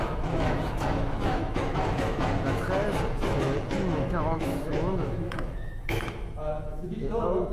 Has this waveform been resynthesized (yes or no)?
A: yes